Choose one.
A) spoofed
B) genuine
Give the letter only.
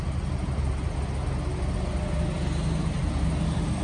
B